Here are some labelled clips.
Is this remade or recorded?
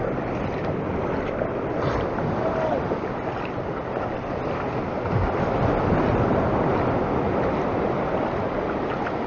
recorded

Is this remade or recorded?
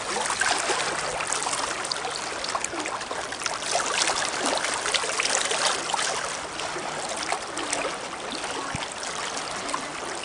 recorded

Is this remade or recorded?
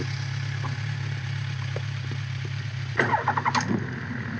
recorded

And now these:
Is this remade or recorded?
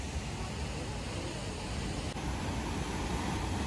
recorded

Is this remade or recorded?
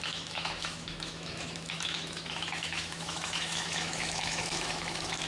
remade